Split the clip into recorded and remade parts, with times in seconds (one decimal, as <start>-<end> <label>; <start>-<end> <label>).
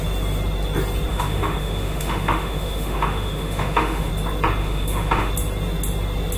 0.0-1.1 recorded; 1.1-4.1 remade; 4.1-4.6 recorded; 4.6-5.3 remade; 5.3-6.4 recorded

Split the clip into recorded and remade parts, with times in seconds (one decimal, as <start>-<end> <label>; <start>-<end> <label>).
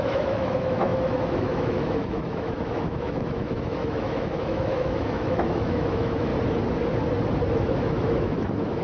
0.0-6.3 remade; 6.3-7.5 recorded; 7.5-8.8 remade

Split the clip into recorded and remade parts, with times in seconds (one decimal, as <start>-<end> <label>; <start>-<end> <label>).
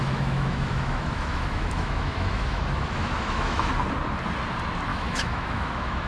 0.0-3.7 remade; 3.7-4.9 recorded; 4.9-6.1 remade